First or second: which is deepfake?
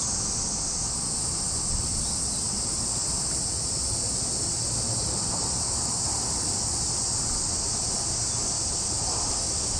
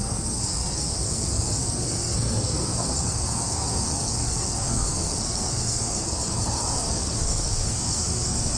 second